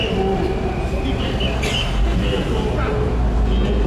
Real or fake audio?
real